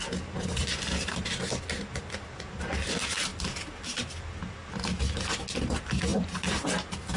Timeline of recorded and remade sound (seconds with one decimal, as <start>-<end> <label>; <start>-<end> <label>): 0.0-3.3 recorded; 3.3-4.8 remade; 4.8-7.2 recorded